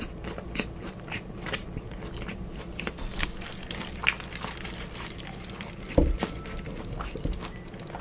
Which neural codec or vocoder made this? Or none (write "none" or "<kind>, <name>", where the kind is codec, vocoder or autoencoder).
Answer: vocoder, BigVGAN v2